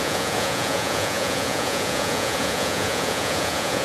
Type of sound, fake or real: fake